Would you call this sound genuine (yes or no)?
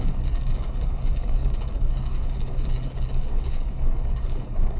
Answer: no